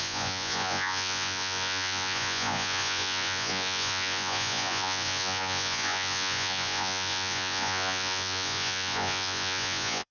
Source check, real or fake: fake